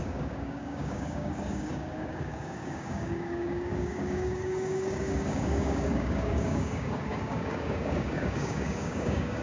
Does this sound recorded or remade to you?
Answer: remade